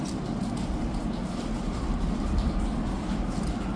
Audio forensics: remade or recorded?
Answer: recorded